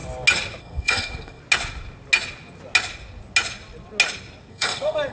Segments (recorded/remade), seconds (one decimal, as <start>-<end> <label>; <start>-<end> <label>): 0.0-0.6 recorded; 0.6-1.4 remade; 1.4-4.5 recorded; 4.5-5.1 remade